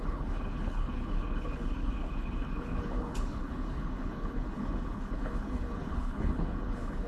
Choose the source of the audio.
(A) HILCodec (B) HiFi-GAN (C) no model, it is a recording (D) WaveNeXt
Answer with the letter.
A